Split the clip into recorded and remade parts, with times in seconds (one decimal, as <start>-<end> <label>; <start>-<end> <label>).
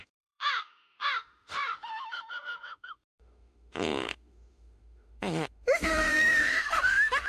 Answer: 0.0-7.3 remade